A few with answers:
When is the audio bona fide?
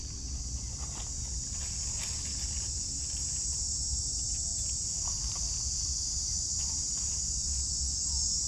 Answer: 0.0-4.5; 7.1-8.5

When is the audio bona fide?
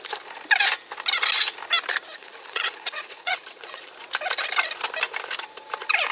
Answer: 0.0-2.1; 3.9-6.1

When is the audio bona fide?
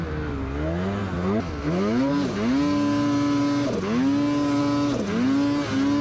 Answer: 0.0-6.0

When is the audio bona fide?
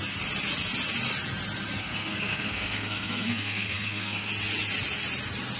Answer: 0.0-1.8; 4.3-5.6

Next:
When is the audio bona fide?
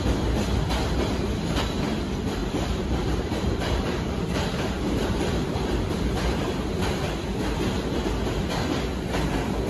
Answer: 0.0-2.4; 6.8-9.7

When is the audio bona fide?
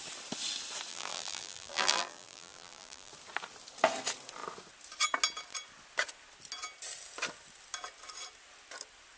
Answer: 0.0-0.9; 3.1-9.2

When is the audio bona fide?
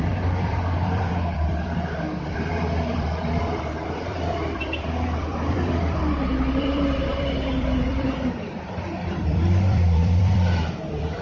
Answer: none